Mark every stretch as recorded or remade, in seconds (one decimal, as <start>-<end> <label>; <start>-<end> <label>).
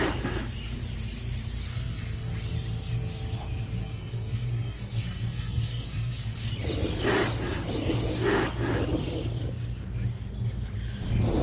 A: 0.0-1.7 recorded; 1.7-2.3 remade; 2.3-3.8 recorded; 3.8-6.5 remade; 6.5-11.4 recorded